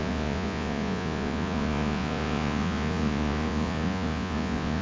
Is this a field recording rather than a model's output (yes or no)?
no